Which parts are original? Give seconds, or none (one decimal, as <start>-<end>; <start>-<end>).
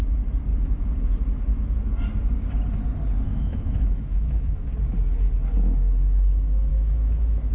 0.0-3.3; 4.7-6.7